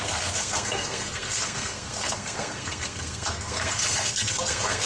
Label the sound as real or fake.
fake